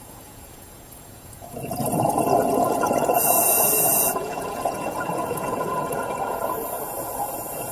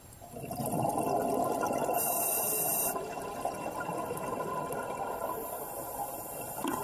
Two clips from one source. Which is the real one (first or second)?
second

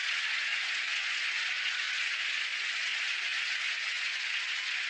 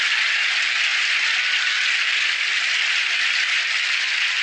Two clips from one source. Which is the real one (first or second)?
second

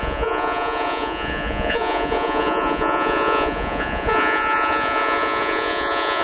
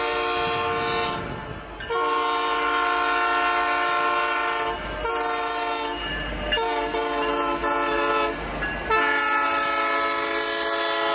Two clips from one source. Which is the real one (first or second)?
second